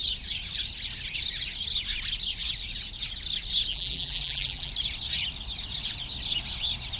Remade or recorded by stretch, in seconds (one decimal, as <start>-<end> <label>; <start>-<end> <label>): 0.0-3.7 recorded; 3.7-4.7 remade; 4.7-7.0 recorded